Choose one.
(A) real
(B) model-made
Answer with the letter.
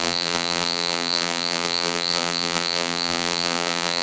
B